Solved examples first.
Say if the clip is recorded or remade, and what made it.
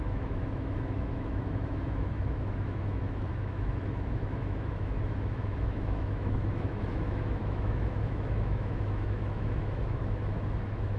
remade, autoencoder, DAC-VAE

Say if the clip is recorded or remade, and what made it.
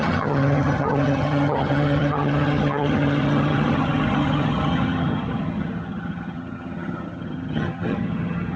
remade, vocoder, HiFi-GAN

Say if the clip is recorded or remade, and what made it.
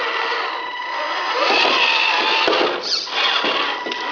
recorded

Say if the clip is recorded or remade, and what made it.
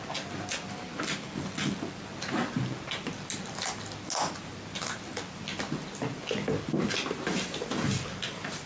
recorded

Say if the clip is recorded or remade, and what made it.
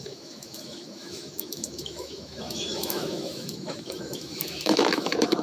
remade, autoencoder, DAC-VAE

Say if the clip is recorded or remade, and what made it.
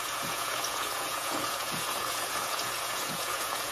remade, vocoder, Vocos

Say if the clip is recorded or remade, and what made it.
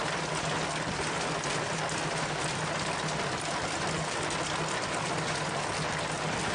recorded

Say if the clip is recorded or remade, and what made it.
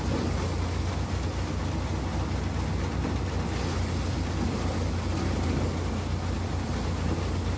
recorded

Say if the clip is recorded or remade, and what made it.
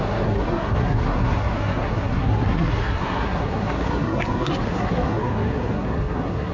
remade, codec, SNAC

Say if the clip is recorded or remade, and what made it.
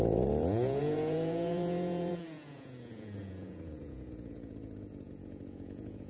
remade, vocoder, Vocos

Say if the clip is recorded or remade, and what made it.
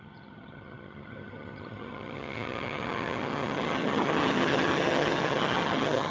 remade, vocoder, HiFi-GAN